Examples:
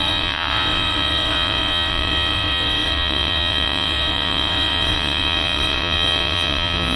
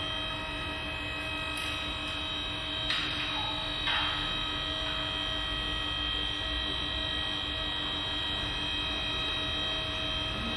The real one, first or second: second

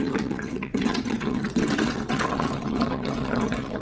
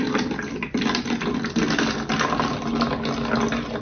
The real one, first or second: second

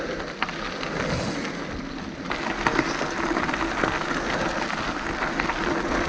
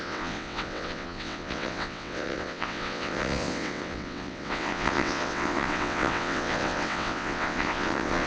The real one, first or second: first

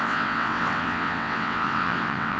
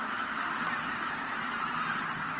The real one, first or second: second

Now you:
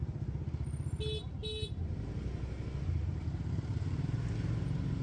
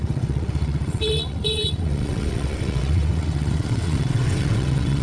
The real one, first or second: first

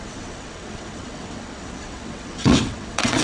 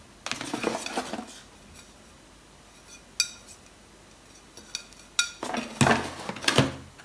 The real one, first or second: second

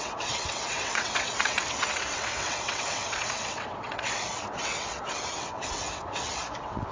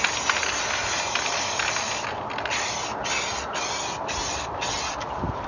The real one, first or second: second